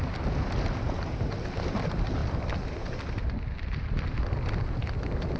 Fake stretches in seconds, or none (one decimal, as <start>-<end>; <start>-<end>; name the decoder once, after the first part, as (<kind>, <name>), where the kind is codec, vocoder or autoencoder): none